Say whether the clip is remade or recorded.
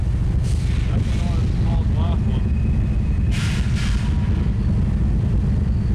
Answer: recorded